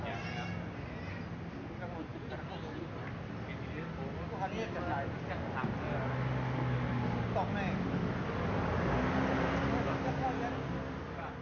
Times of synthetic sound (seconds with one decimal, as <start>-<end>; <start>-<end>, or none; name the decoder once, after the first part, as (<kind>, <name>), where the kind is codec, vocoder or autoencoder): none